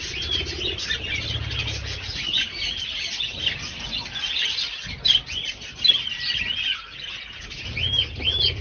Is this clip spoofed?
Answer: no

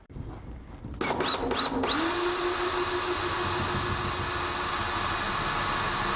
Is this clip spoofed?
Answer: no